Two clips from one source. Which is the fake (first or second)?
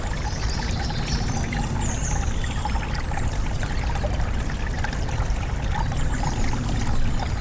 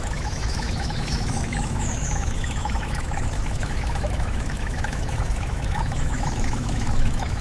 second